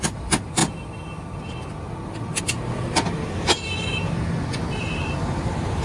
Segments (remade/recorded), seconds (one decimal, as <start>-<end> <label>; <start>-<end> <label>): 0.0-5.8 recorded